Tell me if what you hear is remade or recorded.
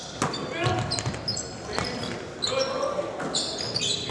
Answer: recorded